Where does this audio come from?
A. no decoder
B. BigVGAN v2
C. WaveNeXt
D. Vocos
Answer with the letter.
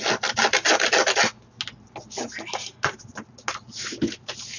A